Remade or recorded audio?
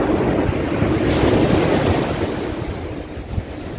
recorded